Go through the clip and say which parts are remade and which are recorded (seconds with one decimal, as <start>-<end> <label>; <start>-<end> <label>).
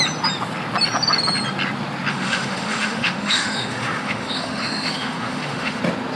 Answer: 0.0-2.1 recorded; 2.1-5.8 remade; 5.8-6.2 recorded